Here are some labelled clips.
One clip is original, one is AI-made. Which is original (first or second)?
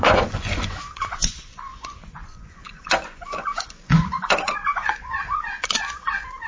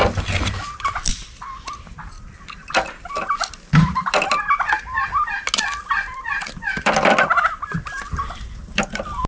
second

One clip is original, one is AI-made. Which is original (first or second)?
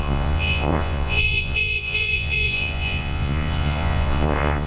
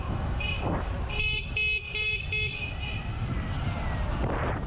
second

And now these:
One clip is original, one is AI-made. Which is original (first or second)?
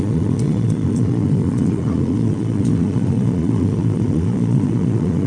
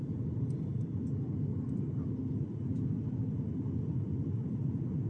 second